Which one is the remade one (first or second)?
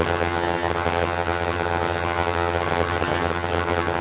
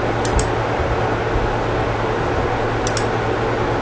first